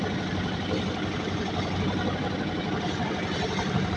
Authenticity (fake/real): real